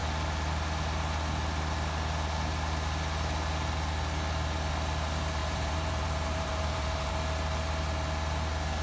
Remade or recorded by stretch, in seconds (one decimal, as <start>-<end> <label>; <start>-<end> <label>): 0.0-5.4 recorded; 5.4-7.1 remade; 7.1-8.8 recorded